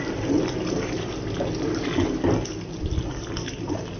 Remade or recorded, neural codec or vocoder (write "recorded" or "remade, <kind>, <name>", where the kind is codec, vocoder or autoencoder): recorded